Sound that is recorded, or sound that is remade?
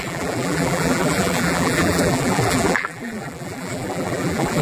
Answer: remade